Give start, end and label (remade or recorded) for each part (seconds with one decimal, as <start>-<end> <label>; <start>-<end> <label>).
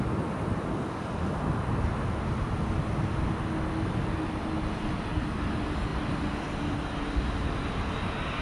0.0-8.4 recorded